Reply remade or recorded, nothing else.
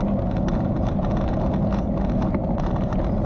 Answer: recorded